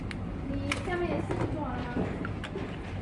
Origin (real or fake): real